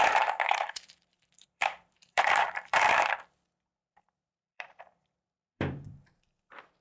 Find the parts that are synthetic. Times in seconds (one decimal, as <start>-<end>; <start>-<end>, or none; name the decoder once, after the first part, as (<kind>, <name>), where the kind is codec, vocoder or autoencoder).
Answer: 0.0-3.1 (vocoder, BigVGAN v2); 3.8-6.2